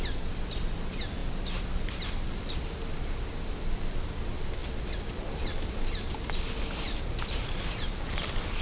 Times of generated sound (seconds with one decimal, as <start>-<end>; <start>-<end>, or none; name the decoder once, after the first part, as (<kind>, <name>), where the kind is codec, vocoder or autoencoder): 1.2-2.9 (vocoder, BigVGAN v2)